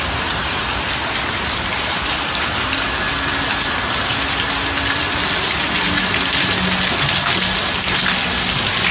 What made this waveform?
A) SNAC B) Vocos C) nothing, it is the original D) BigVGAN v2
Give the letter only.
C